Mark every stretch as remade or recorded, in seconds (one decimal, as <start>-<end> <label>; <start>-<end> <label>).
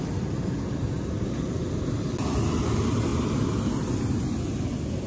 0.0-5.1 recorded